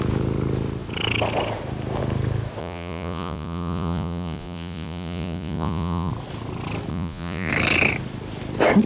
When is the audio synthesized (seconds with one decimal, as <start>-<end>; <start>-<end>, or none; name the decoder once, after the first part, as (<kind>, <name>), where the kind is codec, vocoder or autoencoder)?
2.6-6.1 (vocoder, Vocos); 6.9-7.5